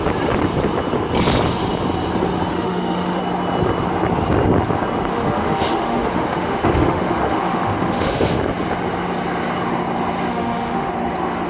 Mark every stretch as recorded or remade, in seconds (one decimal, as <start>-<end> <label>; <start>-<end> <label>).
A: 0.0-2.5 recorded; 2.5-3.2 remade; 3.2-5.1 recorded; 5.1-8.4 remade; 8.4-10.3 recorded; 10.3-10.9 remade; 10.9-11.5 recorded